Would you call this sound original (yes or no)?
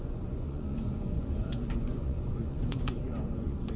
no